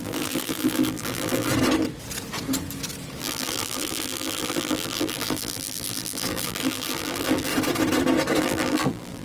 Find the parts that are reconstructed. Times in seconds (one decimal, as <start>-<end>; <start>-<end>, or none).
0.0-1.5; 3.2-7.5; 8.4-9.2